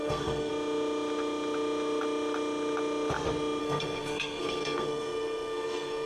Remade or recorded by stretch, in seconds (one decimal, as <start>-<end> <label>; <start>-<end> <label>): 0.0-0.5 remade; 0.5-3.6 recorded; 3.6-6.1 remade